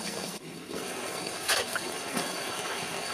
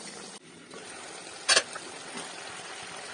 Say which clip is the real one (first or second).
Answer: second